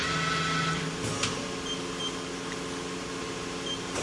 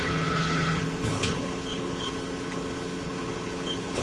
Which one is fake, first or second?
second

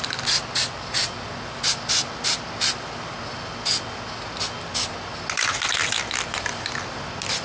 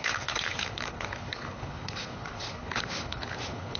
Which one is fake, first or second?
second